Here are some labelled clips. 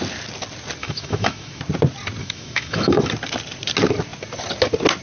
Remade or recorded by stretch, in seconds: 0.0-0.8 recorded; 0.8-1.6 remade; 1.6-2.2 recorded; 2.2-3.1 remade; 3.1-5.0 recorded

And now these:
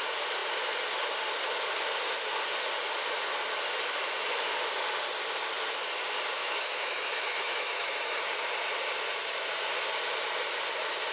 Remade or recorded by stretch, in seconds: 0.0-6.4 recorded; 6.4-8.2 remade; 8.2-11.1 recorded

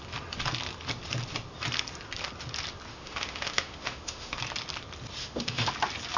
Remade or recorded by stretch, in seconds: 0.0-2.9 recorded; 2.9-4.4 remade; 4.4-5.2 recorded; 5.2-5.7 remade; 5.7-6.2 recorded

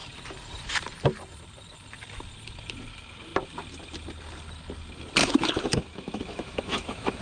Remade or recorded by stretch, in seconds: 0.0-5.2 recorded; 5.2-7.2 remade